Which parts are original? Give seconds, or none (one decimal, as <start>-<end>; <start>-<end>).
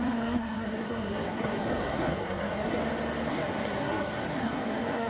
2.8-3.3